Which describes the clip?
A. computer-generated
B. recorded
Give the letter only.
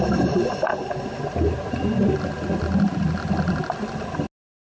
B